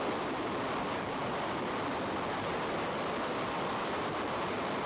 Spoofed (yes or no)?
no